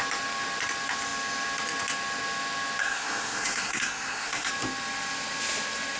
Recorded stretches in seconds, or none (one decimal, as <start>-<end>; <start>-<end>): 0.0-2.8; 4.5-6.0